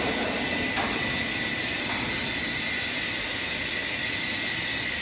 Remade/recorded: recorded